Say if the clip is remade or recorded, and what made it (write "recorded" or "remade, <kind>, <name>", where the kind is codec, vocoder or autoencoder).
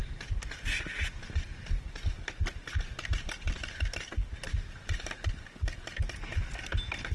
recorded